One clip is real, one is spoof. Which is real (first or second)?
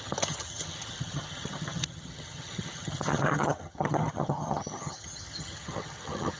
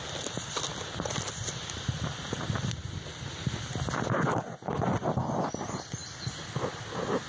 second